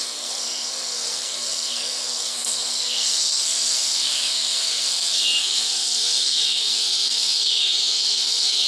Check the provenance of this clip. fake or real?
fake